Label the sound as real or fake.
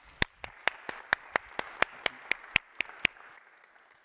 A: real